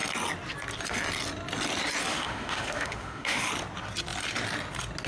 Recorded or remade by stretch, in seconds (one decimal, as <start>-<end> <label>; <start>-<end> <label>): 0.0-2.1 recorded; 2.1-3.5 remade; 3.5-5.1 recorded